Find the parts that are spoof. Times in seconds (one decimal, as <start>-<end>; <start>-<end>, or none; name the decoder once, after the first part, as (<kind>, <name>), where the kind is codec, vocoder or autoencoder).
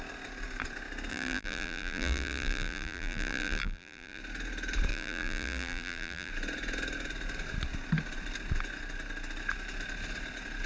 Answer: 1.1-4.2 (vocoder, BigVGAN v2); 4.9-6.3